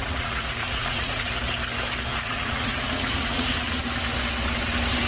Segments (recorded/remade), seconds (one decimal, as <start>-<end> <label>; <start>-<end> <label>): 0.0-1.3 remade; 1.3-2.1 recorded; 2.1-3.8 remade; 3.8-5.1 recorded